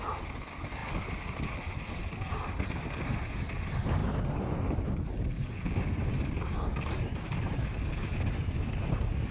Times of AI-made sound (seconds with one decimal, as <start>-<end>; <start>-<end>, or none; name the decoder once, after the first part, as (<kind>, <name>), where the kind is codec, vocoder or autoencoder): none